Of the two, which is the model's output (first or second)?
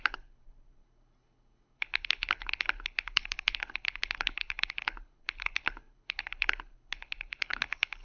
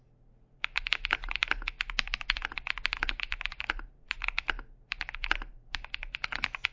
first